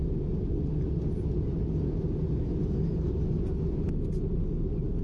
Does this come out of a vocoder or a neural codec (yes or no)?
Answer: no